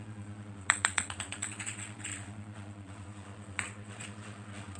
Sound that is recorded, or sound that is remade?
remade